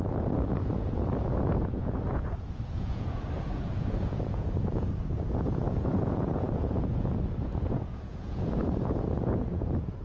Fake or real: fake